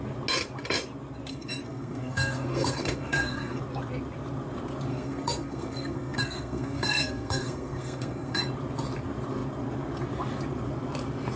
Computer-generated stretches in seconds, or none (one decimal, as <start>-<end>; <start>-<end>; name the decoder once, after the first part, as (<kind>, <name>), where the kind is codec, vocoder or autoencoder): 1.3-3.6 (codec, SNAC); 4.9-8.4